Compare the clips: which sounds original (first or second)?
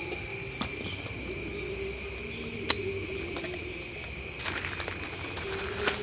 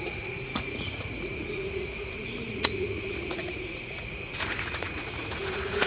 first